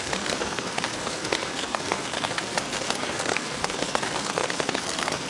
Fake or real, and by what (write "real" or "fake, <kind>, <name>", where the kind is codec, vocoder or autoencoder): fake, codec, SNAC